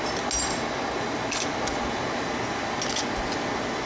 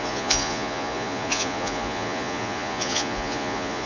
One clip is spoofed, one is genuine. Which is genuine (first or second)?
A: first